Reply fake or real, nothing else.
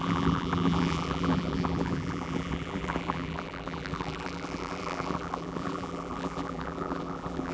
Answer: fake